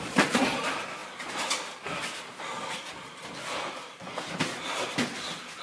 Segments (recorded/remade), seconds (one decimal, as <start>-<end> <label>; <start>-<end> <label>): 0.0-5.6 recorded